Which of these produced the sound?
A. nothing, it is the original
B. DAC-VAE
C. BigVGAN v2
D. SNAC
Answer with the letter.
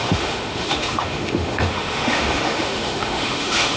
B